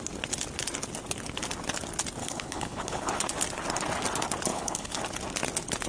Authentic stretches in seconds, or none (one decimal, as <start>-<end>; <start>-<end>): 0.0-2.2; 3.1-4.5; 5.0-5.9